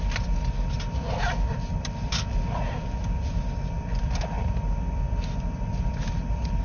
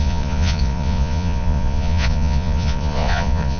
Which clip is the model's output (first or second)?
second